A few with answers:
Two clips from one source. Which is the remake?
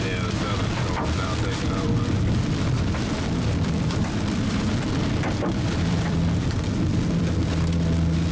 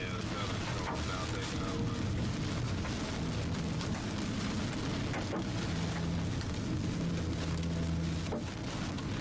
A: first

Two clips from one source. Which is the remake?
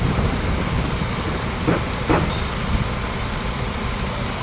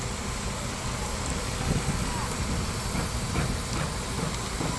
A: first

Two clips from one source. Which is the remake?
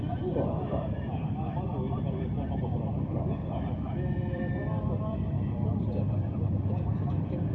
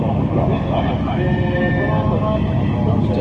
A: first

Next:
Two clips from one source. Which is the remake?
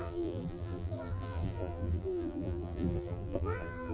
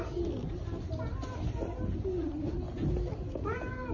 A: first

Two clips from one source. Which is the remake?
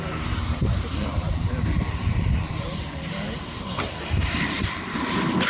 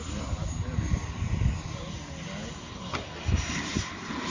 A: first